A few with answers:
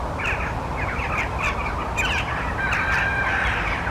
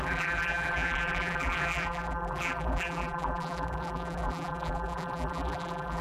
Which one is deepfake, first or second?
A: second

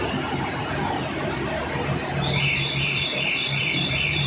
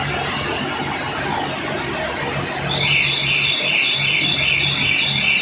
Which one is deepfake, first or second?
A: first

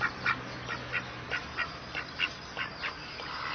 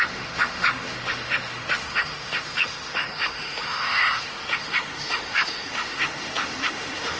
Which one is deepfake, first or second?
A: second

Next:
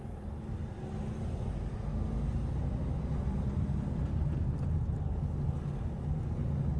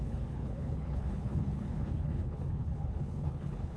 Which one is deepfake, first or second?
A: second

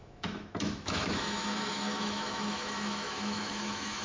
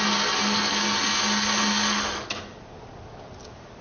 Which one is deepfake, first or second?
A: first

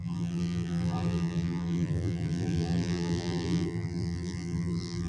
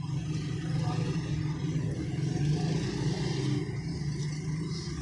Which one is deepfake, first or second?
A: first